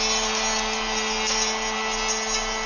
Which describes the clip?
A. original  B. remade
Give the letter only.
A